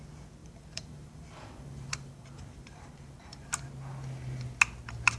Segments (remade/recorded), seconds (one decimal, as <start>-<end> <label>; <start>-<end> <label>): 0.0-0.4 recorded; 0.4-3.5 remade; 3.5-5.2 recorded